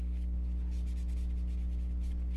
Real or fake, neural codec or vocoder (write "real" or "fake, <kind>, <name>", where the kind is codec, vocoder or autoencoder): real